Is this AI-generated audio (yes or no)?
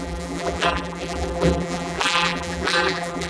yes